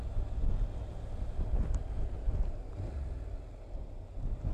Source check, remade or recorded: recorded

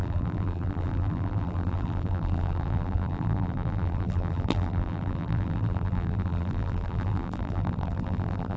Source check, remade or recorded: remade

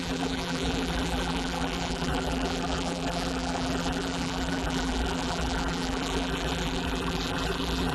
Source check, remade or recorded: remade